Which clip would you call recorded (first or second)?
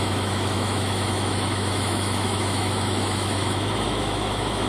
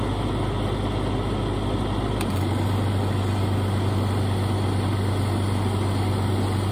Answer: second